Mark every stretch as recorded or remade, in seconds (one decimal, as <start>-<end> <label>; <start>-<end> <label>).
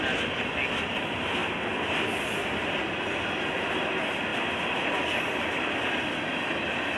0.0-7.0 recorded